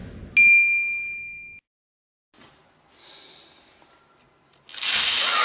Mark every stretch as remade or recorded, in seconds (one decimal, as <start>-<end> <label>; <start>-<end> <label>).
0.0-5.4 recorded